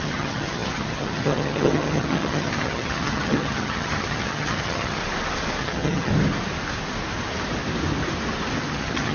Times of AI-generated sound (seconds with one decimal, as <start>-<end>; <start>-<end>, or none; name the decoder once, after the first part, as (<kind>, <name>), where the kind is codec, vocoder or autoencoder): 0.0-5.0 (vocoder, HiFi-GAN); 5.6-6.1; 8.7-9.1